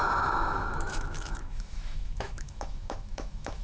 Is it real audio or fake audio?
fake